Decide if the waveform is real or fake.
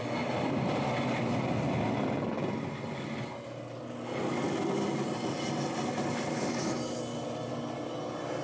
real